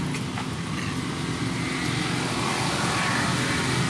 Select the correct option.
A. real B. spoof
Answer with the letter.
A